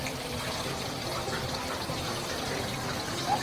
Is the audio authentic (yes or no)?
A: yes